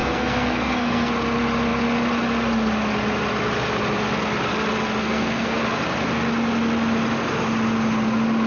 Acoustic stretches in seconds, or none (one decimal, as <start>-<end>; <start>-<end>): 1.1-5.0; 5.6-8.5